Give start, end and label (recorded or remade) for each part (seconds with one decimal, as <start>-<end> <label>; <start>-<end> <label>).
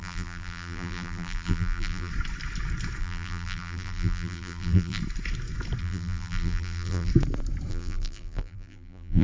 0.0-2.1 remade; 2.1-3.0 recorded; 3.0-5.0 remade; 5.0-5.8 recorded; 5.8-7.1 remade; 7.1-7.7 recorded; 7.7-9.2 remade